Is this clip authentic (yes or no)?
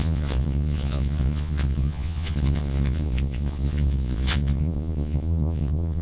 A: no